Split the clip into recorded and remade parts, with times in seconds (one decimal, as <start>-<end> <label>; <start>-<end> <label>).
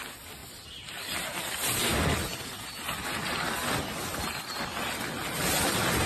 0.0-6.1 recorded